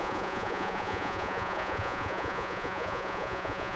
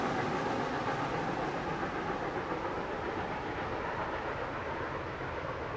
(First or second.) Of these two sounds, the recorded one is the second